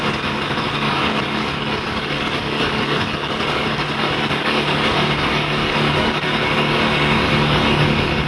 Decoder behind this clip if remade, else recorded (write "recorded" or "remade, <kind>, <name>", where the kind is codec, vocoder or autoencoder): remade, codec, DAC